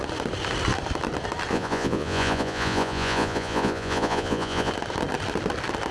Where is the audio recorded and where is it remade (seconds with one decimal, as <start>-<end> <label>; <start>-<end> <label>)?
0.0-1.5 recorded; 1.5-4.7 remade; 4.7-5.9 recorded